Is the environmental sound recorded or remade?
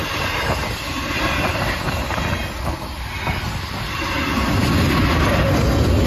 recorded